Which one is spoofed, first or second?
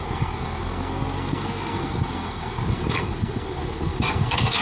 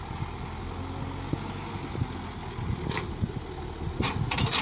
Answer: first